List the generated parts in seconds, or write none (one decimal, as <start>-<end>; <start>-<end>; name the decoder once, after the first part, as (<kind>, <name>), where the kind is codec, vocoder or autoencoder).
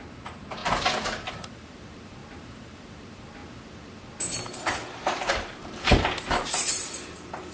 0.0-0.6 (vocoder, BigVGAN v2); 1.3-3.4; 5.3-7.5